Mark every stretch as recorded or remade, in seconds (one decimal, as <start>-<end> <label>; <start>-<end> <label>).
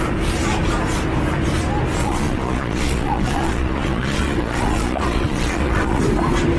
0.0-2.0 recorded; 2.0-6.0 remade; 6.0-6.6 recorded